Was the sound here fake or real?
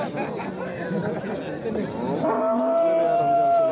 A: real